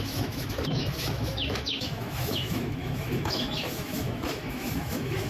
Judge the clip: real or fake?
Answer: fake